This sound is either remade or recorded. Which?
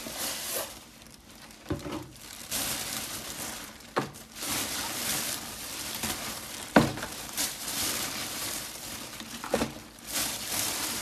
remade